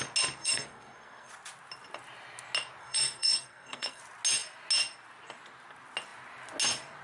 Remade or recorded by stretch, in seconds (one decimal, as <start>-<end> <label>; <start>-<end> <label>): 0.0-0.4 recorded; 0.4-1.3 remade; 1.3-2.8 recorded; 2.8-4.0 remade; 4.0-7.0 recorded